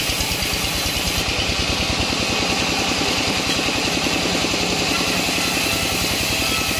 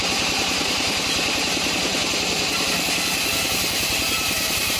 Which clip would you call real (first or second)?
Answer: first